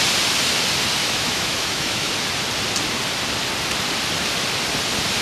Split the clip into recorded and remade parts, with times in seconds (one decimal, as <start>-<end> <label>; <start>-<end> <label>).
0.0-1.0 recorded; 1.0-2.1 remade; 2.1-5.2 recorded

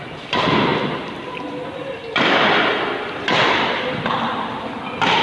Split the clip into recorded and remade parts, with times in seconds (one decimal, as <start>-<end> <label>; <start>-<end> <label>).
0.0-5.2 recorded

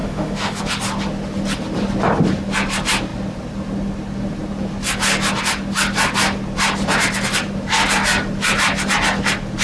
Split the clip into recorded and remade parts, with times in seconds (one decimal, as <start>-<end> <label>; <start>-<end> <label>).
0.0-0.6 remade; 0.6-9.6 recorded

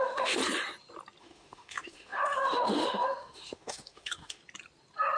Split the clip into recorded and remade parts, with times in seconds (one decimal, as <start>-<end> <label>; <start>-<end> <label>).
0.0-0.4 remade; 0.4-1.2 recorded; 1.2-4.4 remade; 4.4-5.2 recorded